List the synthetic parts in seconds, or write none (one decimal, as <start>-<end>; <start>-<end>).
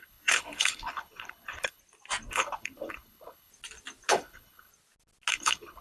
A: 0.0-1.8; 2.3-3.5; 4.1-4.7; 5.3-5.8